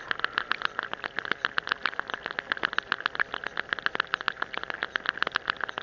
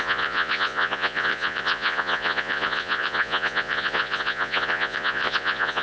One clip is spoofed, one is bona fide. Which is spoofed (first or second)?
second